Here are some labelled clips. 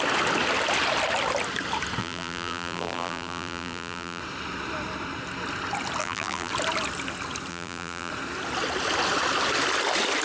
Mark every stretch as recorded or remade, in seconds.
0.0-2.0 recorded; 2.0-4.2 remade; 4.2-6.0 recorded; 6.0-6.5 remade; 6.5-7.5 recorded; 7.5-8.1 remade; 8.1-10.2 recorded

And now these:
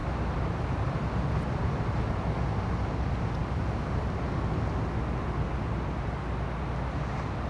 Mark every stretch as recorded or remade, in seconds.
0.0-7.5 recorded